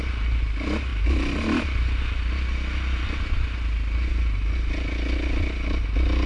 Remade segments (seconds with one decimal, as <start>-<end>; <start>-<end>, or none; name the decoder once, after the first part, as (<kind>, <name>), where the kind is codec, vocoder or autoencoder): none